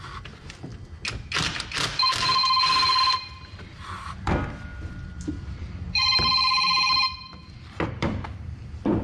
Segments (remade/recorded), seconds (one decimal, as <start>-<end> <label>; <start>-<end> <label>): 0.0-0.7 remade; 0.7-1.4 recorded; 1.4-9.0 remade